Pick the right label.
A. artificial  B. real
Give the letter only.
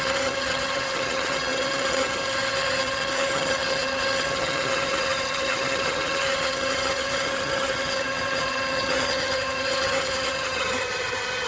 A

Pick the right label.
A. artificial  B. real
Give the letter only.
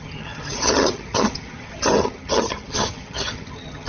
A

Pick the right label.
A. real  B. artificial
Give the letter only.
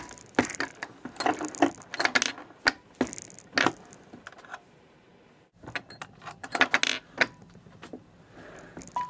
A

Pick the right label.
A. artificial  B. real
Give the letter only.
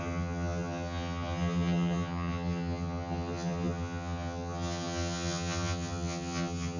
A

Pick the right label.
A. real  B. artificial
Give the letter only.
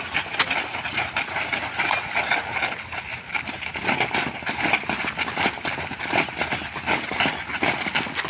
A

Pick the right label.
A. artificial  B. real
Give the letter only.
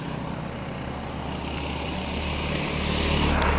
B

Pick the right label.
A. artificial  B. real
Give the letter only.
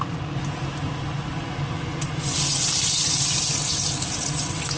B